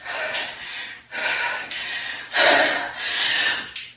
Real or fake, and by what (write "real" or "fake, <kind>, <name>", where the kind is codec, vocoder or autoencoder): real